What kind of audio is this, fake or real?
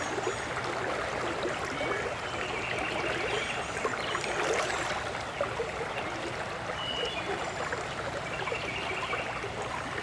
real